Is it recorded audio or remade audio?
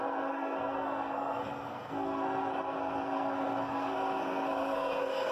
remade